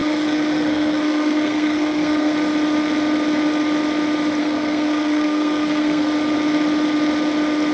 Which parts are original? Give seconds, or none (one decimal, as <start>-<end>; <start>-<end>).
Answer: 2.3-4.4; 6.1-7.7